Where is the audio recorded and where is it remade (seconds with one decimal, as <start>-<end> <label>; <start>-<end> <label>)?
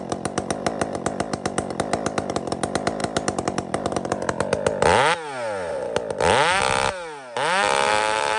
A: 0.0-8.4 recorded